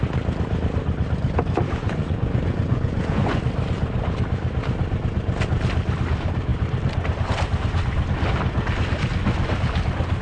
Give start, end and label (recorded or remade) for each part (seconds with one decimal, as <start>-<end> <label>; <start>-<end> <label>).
0.0-1.8 recorded; 1.8-3.4 remade; 3.4-10.2 recorded